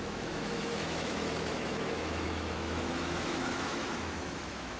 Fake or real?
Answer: fake